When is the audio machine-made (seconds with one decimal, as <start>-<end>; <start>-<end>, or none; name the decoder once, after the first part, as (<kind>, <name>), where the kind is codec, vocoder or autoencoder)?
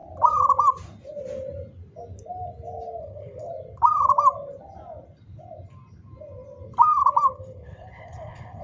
3.0-3.5 (codec, HILCodec); 7.3-8.6